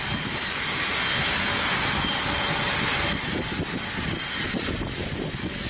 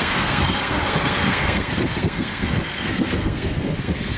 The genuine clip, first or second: first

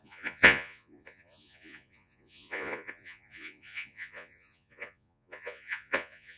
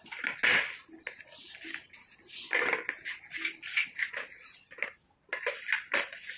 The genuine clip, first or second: second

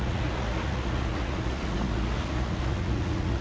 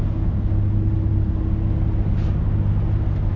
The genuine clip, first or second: second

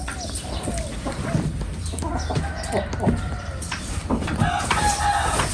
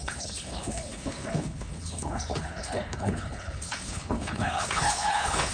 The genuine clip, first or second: first